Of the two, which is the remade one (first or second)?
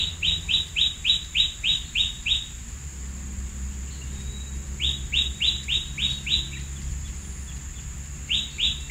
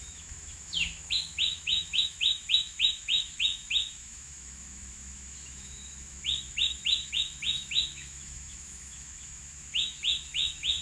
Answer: second